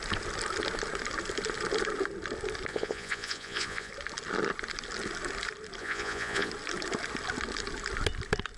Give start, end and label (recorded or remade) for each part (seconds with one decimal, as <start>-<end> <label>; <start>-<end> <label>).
0.0-2.7 recorded; 2.7-3.9 remade; 3.9-5.8 recorded; 5.8-6.5 remade; 6.5-8.6 recorded

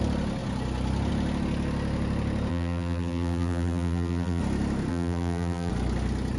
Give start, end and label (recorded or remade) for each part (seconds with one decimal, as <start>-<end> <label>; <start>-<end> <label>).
0.0-2.5 recorded; 2.5-4.4 remade; 4.4-4.9 recorded; 4.9-5.7 remade; 5.7-6.4 recorded

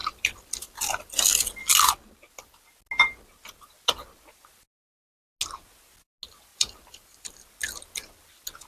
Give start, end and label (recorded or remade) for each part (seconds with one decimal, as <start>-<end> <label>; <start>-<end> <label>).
0.0-1.0 remade; 1.0-6.5 recorded; 6.5-7.3 remade; 7.3-8.7 recorded

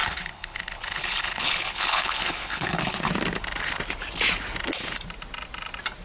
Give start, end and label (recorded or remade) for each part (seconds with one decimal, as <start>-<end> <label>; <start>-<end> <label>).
0.0-3.1 remade; 3.1-6.0 recorded

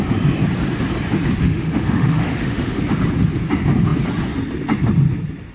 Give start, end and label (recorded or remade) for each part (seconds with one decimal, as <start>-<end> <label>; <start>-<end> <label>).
0.0-1.4 recorded; 1.4-2.8 remade; 2.8-5.5 recorded

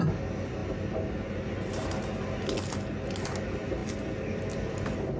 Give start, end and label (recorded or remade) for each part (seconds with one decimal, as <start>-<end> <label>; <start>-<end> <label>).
0.0-5.2 recorded

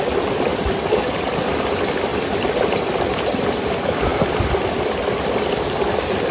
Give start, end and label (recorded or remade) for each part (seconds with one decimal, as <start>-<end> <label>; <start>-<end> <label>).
0.0-6.3 recorded

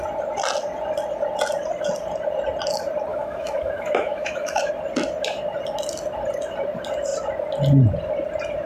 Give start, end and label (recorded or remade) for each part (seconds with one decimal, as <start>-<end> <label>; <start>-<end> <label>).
0.0-3.1 recorded; 3.1-4.7 remade; 4.7-8.7 recorded